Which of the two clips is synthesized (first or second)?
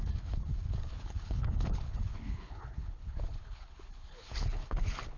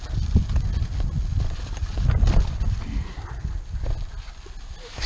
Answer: first